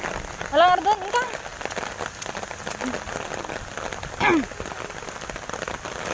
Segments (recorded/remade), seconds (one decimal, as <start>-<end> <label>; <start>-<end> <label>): 0.0-6.1 recorded